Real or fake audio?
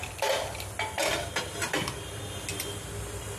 real